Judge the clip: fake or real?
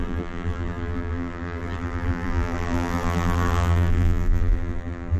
fake